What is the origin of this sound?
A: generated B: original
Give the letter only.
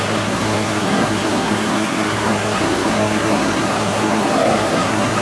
A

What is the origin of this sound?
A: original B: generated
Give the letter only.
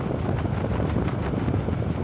A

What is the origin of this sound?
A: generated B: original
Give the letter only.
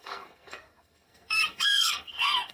A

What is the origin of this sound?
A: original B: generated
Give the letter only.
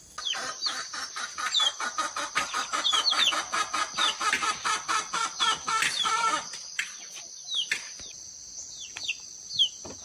A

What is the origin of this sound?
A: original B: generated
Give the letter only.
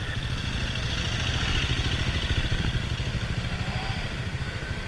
A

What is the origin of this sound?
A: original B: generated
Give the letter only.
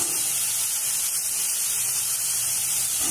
A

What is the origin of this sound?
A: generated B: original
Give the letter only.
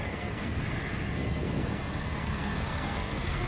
A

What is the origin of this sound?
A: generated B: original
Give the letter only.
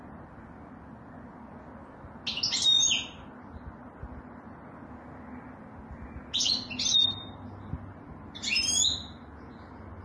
B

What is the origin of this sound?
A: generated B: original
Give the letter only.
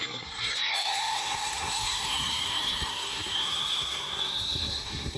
A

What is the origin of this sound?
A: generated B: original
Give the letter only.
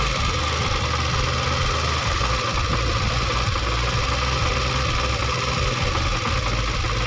B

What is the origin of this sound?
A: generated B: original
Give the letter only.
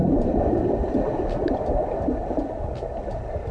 B